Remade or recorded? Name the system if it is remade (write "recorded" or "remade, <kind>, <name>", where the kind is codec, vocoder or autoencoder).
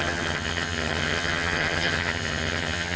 remade, vocoder, HiFi-GAN